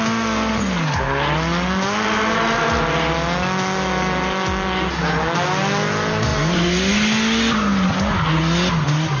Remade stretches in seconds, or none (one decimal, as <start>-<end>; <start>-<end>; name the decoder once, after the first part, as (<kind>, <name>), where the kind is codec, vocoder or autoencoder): none